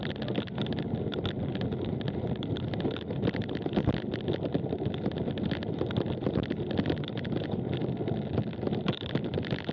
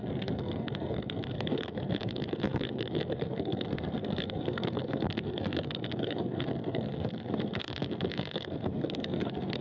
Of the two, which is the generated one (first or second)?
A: second